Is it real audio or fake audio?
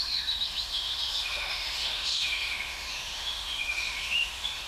fake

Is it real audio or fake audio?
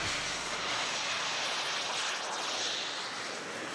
real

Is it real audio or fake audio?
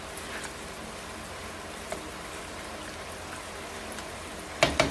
real